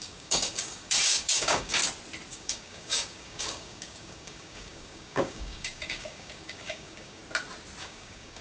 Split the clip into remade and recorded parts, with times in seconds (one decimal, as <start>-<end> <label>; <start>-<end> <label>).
0.0-1.8 remade; 1.8-2.3 recorded; 2.3-7.2 remade; 7.2-7.8 recorded; 7.8-8.4 remade